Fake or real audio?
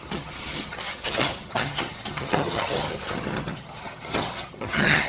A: fake